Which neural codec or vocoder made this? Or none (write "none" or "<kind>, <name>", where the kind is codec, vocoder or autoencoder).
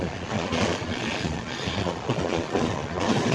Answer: vocoder, Vocos